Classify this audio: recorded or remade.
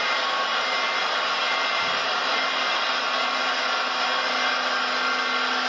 recorded